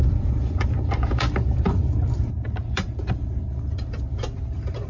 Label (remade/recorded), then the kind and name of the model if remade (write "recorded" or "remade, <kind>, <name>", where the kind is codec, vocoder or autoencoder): remade, vocoder, BigVGAN v2